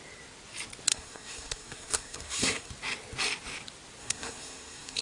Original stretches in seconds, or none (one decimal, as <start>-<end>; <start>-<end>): 0.0-0.9; 2.7-4.0